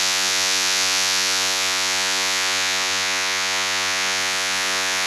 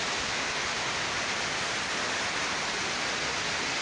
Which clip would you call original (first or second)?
second